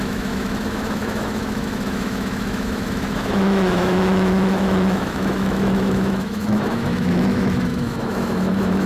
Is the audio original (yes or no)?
no